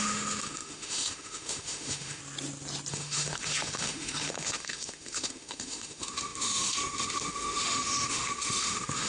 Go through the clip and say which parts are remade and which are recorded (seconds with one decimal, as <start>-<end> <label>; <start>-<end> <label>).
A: 0.0-2.2 remade; 2.2-2.9 recorded; 2.9-9.1 remade